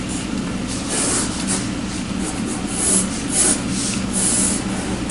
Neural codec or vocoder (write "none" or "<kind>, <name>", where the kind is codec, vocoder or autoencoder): none